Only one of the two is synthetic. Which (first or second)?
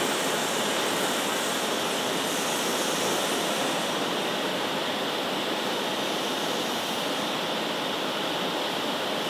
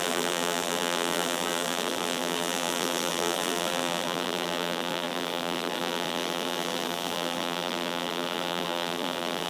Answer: second